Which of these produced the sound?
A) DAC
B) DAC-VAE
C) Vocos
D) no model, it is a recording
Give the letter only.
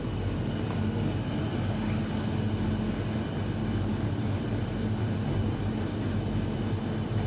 D